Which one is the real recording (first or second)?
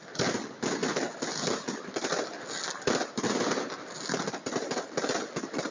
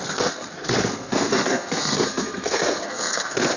first